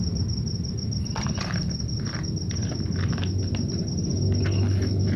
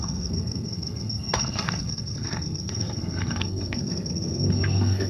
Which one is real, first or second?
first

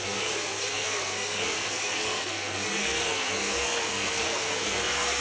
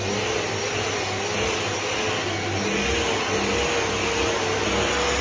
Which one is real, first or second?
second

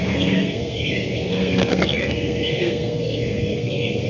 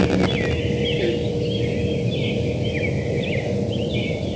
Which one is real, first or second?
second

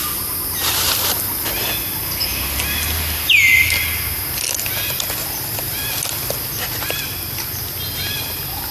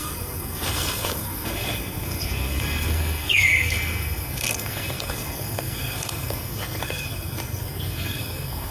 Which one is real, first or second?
first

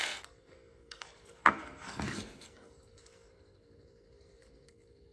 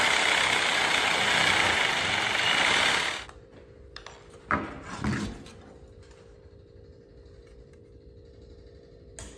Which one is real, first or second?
second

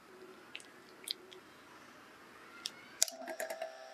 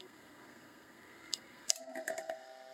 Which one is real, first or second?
first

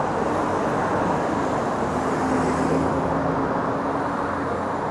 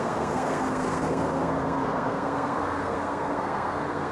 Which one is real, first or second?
first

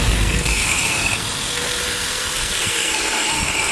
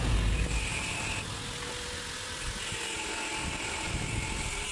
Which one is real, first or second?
second